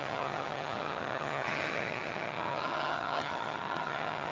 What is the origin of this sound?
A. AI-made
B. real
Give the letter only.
A